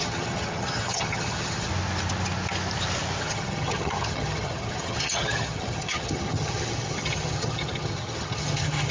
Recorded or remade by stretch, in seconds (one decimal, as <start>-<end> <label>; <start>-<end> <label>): 0.0-1.7 remade; 1.7-3.2 recorded; 3.2-8.9 remade